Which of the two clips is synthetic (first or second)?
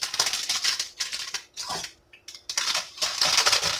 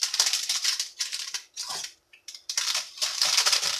second